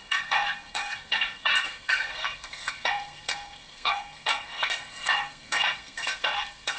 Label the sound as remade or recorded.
remade